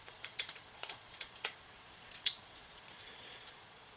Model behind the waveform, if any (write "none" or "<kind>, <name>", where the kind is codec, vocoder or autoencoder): vocoder, Vocos